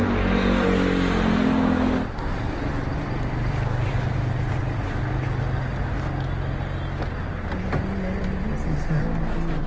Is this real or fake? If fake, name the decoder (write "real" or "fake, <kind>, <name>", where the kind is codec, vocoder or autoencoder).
real